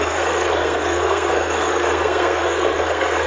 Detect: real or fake fake